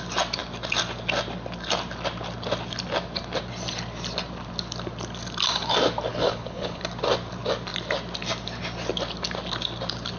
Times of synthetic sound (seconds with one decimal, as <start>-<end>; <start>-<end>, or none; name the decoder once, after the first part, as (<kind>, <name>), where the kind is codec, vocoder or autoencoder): 6.1-6.8 (codec, HILCodec)